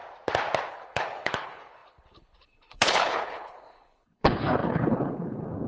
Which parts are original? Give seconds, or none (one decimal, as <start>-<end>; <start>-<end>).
0.0-0.7